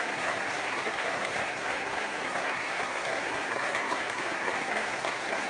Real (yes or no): no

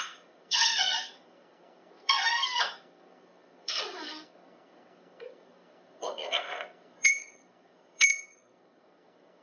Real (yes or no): no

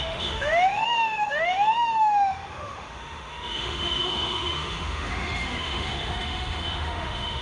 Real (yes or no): no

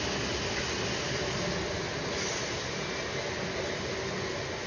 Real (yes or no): yes